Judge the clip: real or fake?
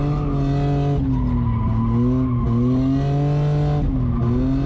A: real